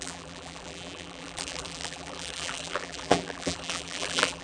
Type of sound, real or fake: fake